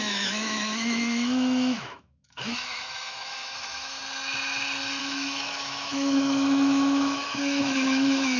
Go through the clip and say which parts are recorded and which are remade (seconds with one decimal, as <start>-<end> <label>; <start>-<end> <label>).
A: 0.0-4.0 remade; 4.0-5.0 recorded; 5.0-8.4 remade